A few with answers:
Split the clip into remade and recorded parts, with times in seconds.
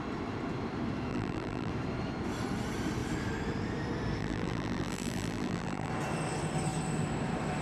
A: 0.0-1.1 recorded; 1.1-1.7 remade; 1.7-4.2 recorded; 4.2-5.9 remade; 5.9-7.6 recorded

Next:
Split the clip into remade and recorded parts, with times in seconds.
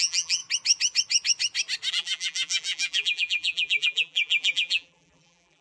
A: 0.0-0.4 remade; 0.4-1.9 recorded; 1.9-5.6 remade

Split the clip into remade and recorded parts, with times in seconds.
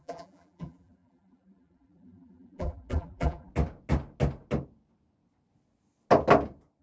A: 0.0-3.5 remade; 3.5-6.8 recorded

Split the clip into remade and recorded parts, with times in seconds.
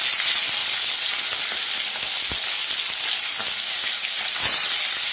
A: 0.0-0.6 recorded; 0.6-2.0 remade; 2.0-5.1 recorded